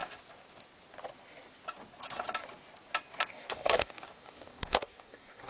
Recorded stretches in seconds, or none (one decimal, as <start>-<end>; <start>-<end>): 0.0-3.3